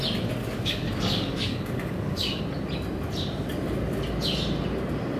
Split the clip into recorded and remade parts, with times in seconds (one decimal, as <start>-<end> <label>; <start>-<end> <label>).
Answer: 0.0-0.4 recorded; 0.4-2.4 remade; 2.4-5.2 recorded